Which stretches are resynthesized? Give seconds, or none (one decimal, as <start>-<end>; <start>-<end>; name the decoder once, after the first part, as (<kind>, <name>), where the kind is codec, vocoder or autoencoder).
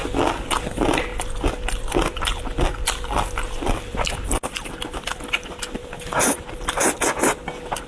1.1-5.8 (vocoder, BigVGAN v2)